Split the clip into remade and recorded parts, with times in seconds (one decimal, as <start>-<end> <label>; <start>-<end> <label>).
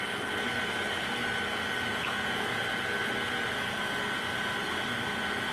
0.0-1.9 recorded; 1.9-2.6 remade; 2.6-5.5 recorded